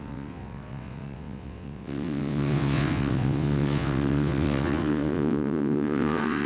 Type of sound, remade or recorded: remade